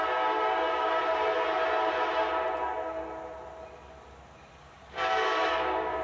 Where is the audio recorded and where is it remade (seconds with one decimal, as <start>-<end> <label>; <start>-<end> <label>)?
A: 0.0-1.0 remade; 1.0-4.6 recorded; 4.6-6.0 remade

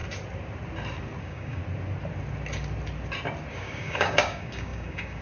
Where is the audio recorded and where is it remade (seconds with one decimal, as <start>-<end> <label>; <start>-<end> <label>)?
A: 0.0-1.2 recorded; 1.2-1.6 remade; 1.6-3.5 recorded; 3.5-5.2 remade

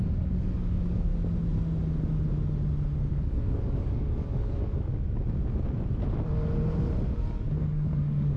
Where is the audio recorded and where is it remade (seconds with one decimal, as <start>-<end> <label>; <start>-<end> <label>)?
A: 0.0-1.1 remade; 1.1-3.1 recorded; 3.1-4.9 remade; 4.9-7.5 recorded; 7.5-8.4 remade

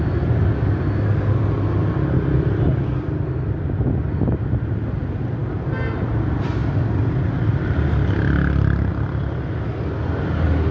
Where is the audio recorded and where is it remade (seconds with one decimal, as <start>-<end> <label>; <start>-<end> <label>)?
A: 0.0-10.7 recorded

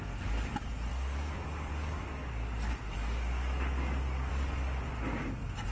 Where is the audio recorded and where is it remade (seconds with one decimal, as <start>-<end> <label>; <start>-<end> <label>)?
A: 0.0-0.9 recorded; 0.9-4.3 remade; 4.3-5.7 recorded